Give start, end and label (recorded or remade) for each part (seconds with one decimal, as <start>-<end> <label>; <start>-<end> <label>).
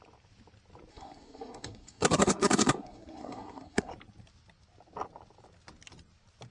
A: 0.0-0.9 recorded; 0.9-3.9 remade; 3.9-6.5 recorded